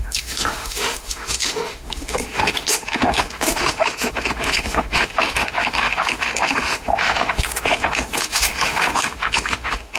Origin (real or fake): fake